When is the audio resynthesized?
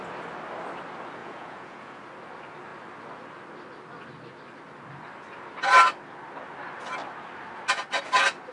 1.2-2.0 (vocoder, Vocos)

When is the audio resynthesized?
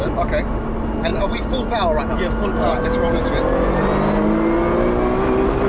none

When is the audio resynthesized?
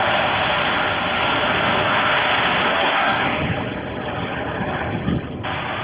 2.7-3.2 (codec, SNAC)